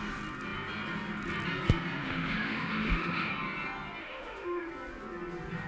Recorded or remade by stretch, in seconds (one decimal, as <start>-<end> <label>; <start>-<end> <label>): 0.0-2.0 recorded; 2.0-3.3 remade; 3.3-4.0 recorded; 4.0-4.7 remade; 4.7-5.7 recorded